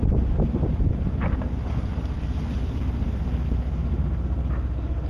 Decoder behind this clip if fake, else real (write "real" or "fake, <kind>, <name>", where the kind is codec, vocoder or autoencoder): real